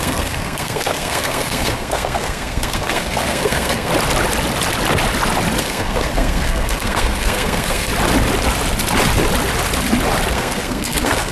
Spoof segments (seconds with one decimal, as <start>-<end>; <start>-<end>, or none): 0.0-3.9; 5.6-7.9; 10.3-11.3